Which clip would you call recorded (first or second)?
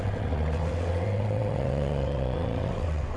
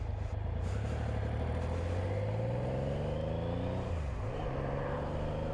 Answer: second